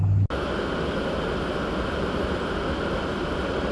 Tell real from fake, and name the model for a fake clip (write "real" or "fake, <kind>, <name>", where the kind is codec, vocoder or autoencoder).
real